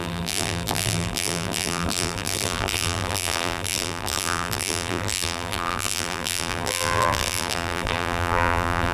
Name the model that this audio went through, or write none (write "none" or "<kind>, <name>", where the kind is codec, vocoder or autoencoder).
vocoder, BigVGAN v2